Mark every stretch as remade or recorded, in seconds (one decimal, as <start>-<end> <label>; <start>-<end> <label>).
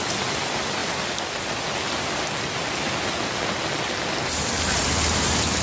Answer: 0.0-5.6 recorded